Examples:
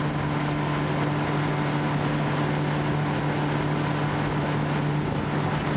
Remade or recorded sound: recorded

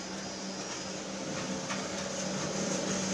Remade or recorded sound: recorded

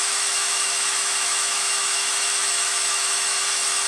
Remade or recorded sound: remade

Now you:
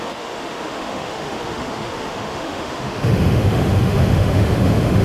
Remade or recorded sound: remade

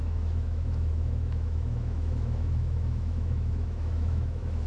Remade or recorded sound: remade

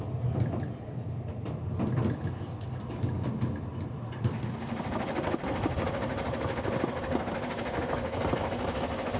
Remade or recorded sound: recorded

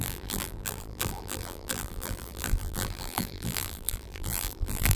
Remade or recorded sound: remade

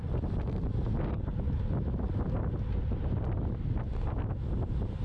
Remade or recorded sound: recorded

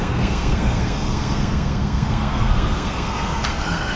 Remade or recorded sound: remade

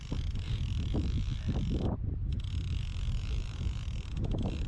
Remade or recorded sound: recorded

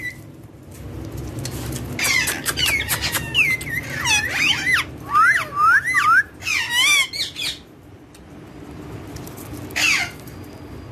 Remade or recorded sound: recorded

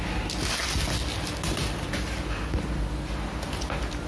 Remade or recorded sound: recorded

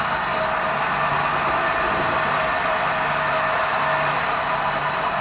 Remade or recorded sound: recorded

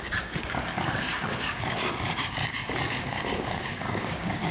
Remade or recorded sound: remade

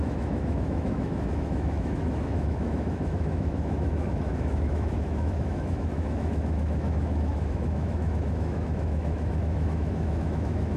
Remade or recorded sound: remade